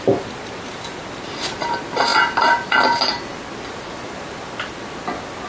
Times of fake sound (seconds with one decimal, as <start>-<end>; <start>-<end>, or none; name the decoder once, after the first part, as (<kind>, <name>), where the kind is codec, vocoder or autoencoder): none